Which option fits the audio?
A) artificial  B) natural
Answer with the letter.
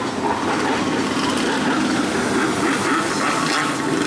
B